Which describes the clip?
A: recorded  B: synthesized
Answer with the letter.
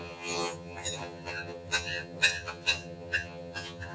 B